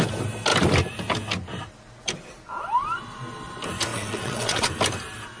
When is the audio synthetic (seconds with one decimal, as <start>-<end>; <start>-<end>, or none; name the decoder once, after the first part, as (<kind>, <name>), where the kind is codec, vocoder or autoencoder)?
3.9-4.7 (vocoder, WaveNeXt)